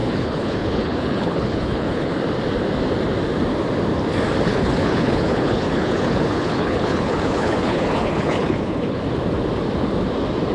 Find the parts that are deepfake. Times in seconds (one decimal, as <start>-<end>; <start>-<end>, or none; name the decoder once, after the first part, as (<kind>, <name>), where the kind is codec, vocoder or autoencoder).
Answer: 0.0-2.1 (codec, HILCodec); 4.5-9.0